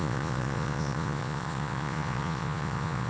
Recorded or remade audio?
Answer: remade